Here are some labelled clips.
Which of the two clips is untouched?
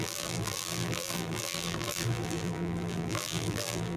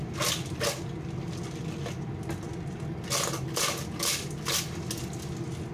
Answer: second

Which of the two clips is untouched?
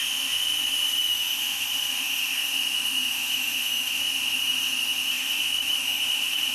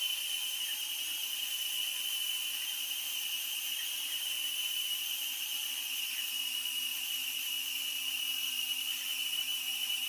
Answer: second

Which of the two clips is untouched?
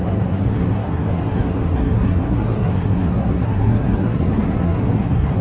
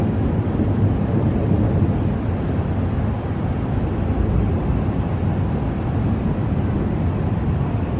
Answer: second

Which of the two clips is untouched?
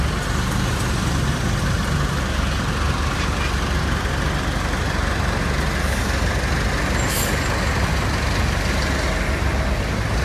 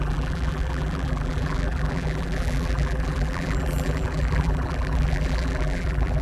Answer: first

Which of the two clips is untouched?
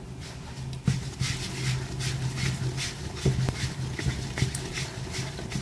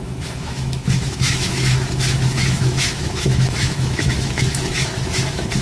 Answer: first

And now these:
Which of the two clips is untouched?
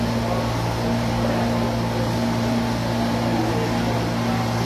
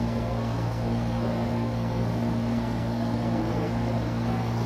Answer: first